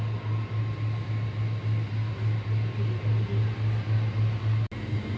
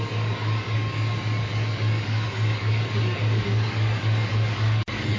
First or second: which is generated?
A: second